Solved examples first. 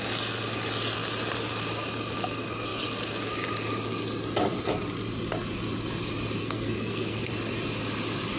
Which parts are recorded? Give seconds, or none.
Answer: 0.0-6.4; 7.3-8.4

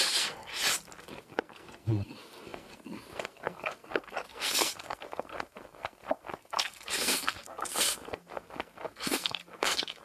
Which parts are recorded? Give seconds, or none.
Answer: 0.5-1.0

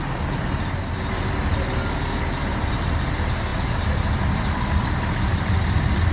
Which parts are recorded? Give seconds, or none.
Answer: 0.0-2.4; 3.0-6.1